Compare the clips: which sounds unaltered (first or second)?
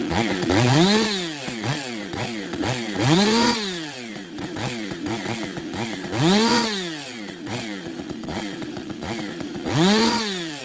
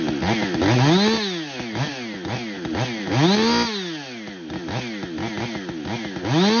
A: second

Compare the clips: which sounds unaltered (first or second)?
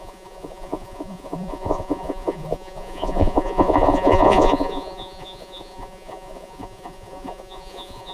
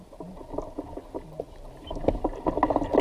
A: second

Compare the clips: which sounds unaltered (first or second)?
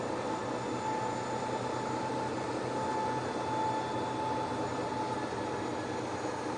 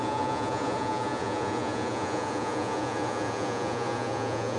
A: first